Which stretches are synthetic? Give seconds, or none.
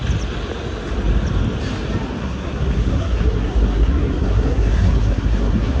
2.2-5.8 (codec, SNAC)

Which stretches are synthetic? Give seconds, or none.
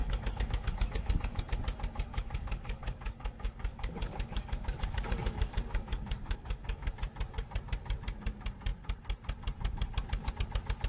0.0-1.4 (codec, DAC); 2.1-6.9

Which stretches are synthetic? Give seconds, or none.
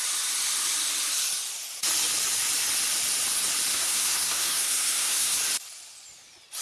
3.7-5.4 (codec, SNAC)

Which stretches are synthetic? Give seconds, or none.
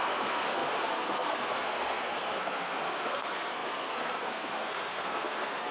0.0-5.7 (codec, SNAC)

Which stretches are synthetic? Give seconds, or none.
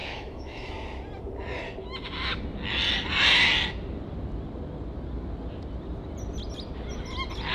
0.0-0.7 (autoencoder, DAC-VAE)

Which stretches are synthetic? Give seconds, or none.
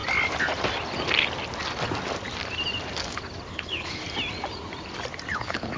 3.5-4.0 (codec, HILCodec); 5.3-5.8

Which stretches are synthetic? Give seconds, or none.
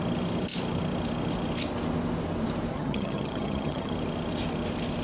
2.7-3.9 (vocoder, HiFi-GAN)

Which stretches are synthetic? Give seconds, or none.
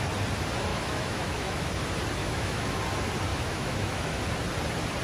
0.7-1.7 (autoencoder, DAC-VAE); 2.2-2.8; 3.3-4.2